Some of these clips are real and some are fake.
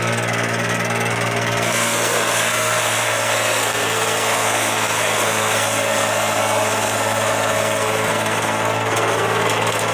fake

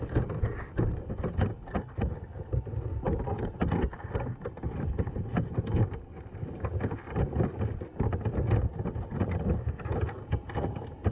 real